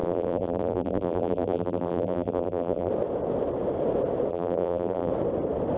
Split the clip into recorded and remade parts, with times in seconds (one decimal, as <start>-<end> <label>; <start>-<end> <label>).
0.0-2.9 remade; 2.9-4.3 recorded; 4.3-5.1 remade; 5.1-5.8 recorded